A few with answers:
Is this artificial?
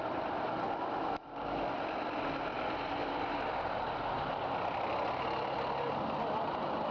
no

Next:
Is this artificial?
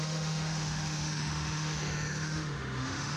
yes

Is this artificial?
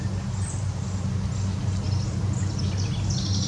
no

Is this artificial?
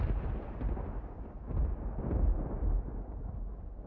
no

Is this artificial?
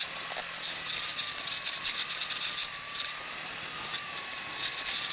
no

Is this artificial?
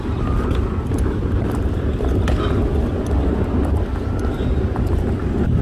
no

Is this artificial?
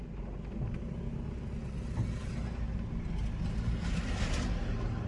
no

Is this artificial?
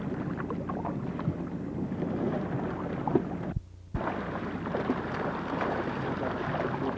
no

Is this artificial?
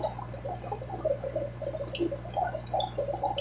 no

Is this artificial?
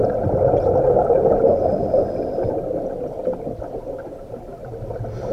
no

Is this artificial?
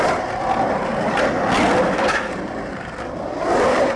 no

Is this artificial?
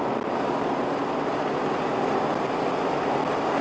no